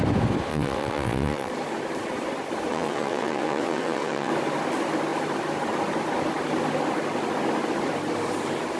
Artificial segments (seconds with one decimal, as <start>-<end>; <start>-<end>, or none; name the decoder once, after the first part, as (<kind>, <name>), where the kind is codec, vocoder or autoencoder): 0.5-1.5 (vocoder, WaveNeXt); 2.7-4.3